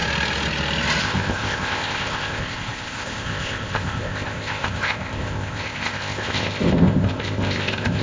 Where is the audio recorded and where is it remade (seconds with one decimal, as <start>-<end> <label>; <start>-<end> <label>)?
0.0-1.0 recorded; 1.0-8.0 remade